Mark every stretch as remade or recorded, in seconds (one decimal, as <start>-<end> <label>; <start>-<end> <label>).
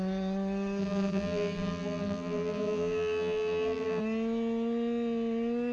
0.0-0.8 recorded; 0.8-4.0 remade; 4.0-5.7 recorded